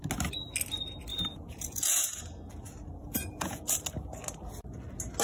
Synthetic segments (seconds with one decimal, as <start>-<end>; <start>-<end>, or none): 1.1-2.2; 3.0-3.6